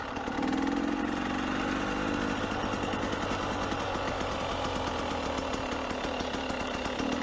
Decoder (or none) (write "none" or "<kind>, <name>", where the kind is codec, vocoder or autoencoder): none